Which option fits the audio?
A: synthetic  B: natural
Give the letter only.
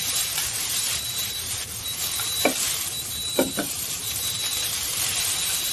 A